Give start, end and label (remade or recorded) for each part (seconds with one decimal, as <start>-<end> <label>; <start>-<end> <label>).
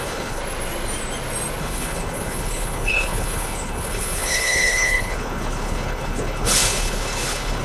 0.0-0.4 remade; 0.4-1.6 recorded; 1.6-7.6 remade